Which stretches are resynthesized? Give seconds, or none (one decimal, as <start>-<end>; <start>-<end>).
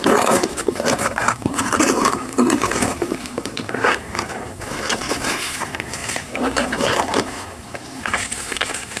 0.0-9.0